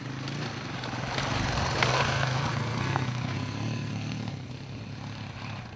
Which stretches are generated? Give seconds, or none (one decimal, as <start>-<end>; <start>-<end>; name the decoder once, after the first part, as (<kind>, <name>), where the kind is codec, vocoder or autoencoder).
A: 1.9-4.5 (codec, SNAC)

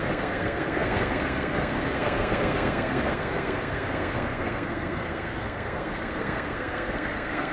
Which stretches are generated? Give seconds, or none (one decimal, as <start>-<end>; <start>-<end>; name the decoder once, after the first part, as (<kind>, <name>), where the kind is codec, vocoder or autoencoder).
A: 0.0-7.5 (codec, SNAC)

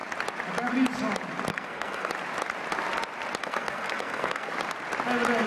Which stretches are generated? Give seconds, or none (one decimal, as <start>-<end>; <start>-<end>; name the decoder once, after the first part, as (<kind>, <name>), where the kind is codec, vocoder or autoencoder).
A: 1.5-2.1 (codec, SNAC); 3.4-4.5

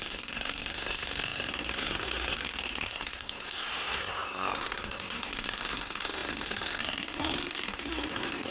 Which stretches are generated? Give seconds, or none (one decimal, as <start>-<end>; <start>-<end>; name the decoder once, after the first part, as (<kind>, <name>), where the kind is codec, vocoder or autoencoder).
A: 0.0-8.5 (codec, SNAC)